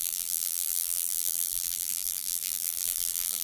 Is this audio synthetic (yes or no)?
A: yes